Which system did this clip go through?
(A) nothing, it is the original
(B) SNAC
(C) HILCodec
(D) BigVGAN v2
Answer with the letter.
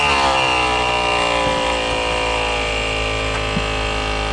A